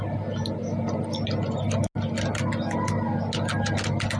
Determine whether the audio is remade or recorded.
recorded